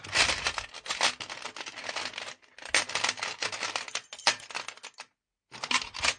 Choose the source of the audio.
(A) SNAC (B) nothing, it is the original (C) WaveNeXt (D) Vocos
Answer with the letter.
B